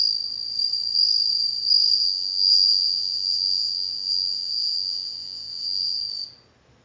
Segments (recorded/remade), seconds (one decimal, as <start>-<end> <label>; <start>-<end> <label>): 0.0-2.0 recorded; 2.0-6.0 remade; 6.0-6.8 recorded